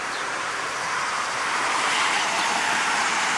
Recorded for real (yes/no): no